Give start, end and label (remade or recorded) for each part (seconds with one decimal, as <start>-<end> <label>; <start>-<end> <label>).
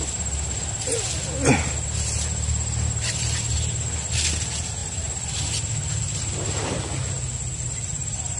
0.0-8.4 recorded